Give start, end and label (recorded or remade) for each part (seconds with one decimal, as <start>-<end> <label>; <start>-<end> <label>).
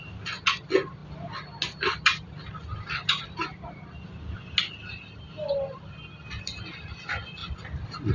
0.0-8.1 recorded